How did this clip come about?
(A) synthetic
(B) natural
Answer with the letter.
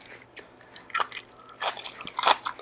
B